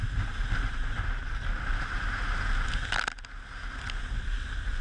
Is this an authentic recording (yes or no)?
yes